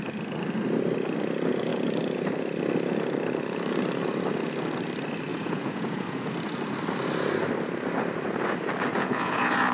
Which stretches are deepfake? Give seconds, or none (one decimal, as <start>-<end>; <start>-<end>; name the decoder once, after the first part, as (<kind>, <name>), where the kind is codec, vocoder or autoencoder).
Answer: 5.3-6.3 (vocoder, Vocos); 8.9-9.7